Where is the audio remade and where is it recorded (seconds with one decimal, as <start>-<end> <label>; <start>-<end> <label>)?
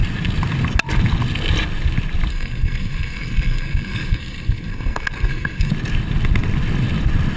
0.0-2.3 recorded; 2.3-5.7 remade; 5.7-7.4 recorded